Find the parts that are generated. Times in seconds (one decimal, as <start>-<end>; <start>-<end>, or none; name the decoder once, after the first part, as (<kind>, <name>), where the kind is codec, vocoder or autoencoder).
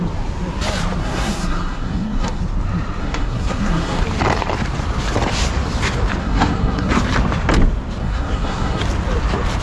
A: 1.0-2.4 (codec, SNAC); 3.0-4.0; 6.2-6.9; 8.0-8.8